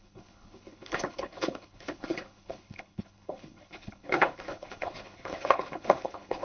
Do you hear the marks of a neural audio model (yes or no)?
yes